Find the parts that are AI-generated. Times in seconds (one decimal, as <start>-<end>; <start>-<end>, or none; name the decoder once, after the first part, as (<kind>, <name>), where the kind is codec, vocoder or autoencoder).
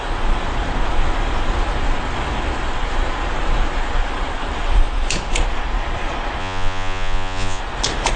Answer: 6.4-7.6 (vocoder, Vocos)